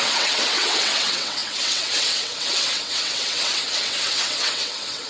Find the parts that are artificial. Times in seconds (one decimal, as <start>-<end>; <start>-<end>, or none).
0.0-5.1